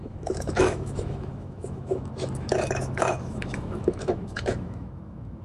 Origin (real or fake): fake